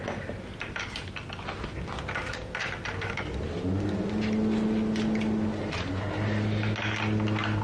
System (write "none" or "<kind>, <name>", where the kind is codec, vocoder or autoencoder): none